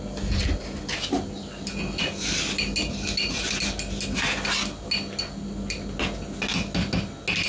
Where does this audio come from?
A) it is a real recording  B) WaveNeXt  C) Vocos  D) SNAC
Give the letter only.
A